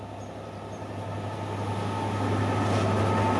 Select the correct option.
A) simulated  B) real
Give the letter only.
B